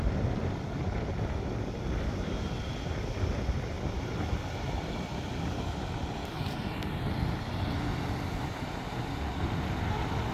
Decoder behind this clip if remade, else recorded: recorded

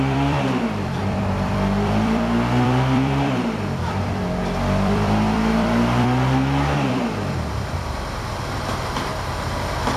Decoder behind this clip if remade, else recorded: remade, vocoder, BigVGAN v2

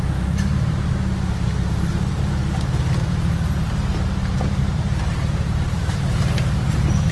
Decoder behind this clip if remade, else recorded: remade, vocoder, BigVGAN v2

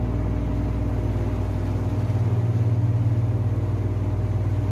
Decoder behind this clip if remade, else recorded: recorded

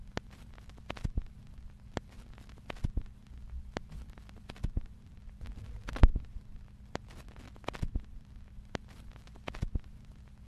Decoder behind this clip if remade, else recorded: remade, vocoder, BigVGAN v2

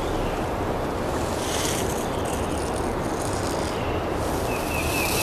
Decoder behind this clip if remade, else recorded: recorded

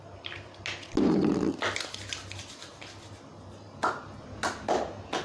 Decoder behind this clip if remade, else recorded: recorded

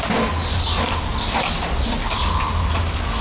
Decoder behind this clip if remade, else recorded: recorded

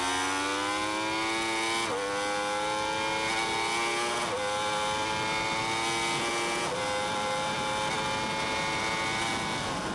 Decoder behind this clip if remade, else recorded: recorded